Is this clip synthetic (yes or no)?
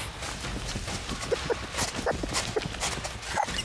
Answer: no